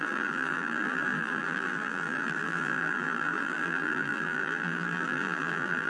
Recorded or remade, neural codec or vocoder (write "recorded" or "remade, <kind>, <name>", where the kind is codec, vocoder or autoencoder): remade, vocoder, BigVGAN v2